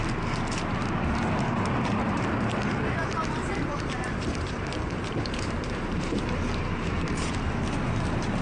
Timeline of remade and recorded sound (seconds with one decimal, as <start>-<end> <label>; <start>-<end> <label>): 0.0-3.5 recorded; 3.5-7.4 remade; 7.4-8.4 recorded